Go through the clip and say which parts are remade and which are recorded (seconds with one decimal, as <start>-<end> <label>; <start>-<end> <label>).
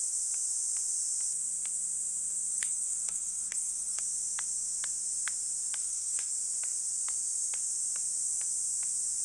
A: 0.0-2.5 recorded; 2.5-4.0 remade; 4.0-5.8 recorded; 5.8-6.3 remade; 6.3-9.2 recorded